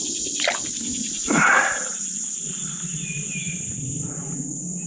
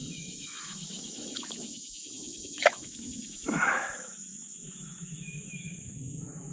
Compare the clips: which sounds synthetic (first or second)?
second